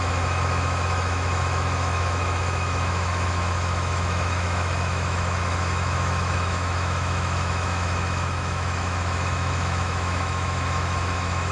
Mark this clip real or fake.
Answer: fake